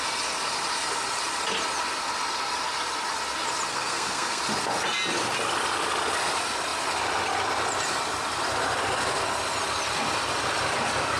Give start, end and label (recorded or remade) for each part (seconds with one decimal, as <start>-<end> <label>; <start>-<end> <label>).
0.0-3.7 recorded; 3.7-4.4 remade; 4.4-11.2 recorded